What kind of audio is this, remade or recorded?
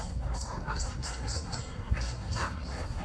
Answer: remade